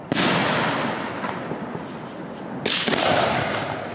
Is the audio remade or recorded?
recorded